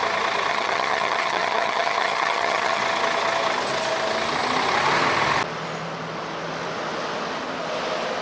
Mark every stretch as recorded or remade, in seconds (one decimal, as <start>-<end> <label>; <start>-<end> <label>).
0.0-0.5 recorded; 0.5-2.8 remade; 2.8-8.2 recorded